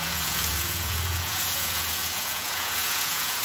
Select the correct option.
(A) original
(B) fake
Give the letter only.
B